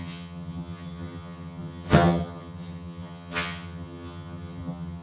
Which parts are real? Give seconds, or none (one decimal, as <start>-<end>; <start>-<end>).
none